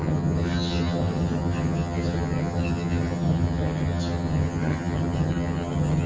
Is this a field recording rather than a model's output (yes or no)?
no